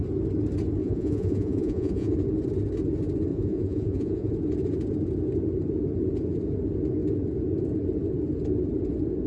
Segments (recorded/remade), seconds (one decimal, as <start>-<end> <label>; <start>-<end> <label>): 0.0-0.8 recorded; 0.8-2.1 remade; 2.1-3.3 recorded; 3.3-4.3 remade; 4.3-9.3 recorded